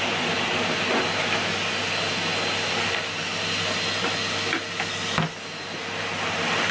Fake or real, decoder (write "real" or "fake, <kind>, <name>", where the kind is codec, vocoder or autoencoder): real